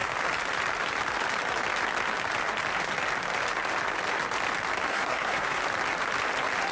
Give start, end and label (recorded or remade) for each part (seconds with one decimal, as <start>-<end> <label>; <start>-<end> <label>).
0.0-4.9 recorded; 4.9-5.6 remade; 5.6-6.7 recorded

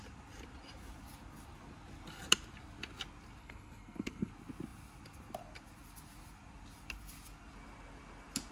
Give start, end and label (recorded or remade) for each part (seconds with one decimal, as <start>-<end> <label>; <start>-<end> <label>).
0.0-3.4 recorded; 3.4-4.3 remade; 4.3-8.5 recorded

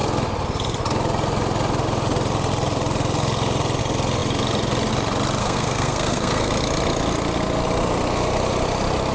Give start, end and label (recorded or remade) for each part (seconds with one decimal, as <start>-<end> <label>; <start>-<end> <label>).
0.0-5.4 recorded; 5.4-6.5 remade; 6.5-9.1 recorded

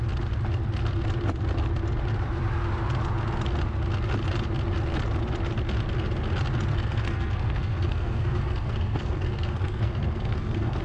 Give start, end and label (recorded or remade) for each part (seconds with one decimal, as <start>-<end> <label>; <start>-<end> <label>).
0.0-6.7 recorded; 6.7-10.8 remade

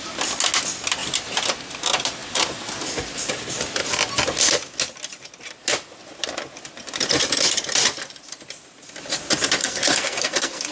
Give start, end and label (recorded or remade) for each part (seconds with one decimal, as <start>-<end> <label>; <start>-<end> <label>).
0.0-9.6 recorded; 9.6-10.7 remade

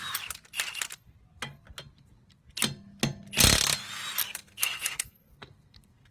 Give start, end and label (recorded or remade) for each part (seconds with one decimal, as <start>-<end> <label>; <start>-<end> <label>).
0.0-4.2 recorded; 4.2-6.1 remade

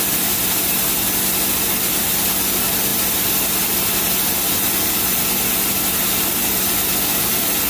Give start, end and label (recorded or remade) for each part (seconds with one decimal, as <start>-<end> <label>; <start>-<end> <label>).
0.0-7.7 recorded